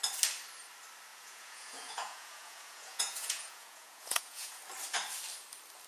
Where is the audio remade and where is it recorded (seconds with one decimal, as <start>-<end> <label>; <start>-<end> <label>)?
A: 0.0-1.1 recorded; 1.1-4.6 remade; 4.6-5.9 recorded